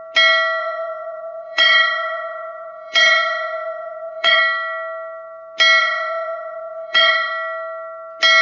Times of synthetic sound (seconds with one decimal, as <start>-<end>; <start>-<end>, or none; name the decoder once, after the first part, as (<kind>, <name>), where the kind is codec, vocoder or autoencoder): 0.6-4.4 (vocoder, Vocos); 5.8-7.3